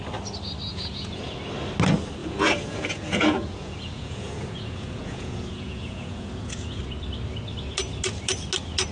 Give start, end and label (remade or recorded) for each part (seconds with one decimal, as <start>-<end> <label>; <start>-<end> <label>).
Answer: 0.0-0.7 recorded; 0.7-1.3 remade; 1.3-2.2 recorded; 2.2-6.8 remade; 6.8-8.9 recorded

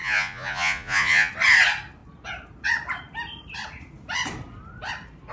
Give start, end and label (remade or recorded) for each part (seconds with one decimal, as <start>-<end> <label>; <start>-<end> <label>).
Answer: 0.0-1.3 remade; 1.3-5.3 recorded

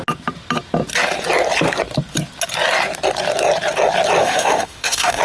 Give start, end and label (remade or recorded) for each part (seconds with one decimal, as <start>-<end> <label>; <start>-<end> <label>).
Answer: 0.0-4.2 recorded; 4.2-5.2 remade

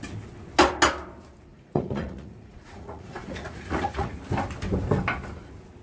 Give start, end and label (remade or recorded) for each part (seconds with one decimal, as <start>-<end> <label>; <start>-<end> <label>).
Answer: 0.0-1.5 recorded; 1.5-4.1 remade; 4.1-5.8 recorded